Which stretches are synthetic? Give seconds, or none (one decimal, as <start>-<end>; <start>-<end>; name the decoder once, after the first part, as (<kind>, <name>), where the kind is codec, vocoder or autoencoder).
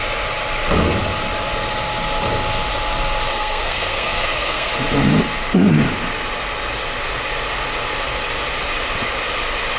3.3-4.7 (codec, SNAC)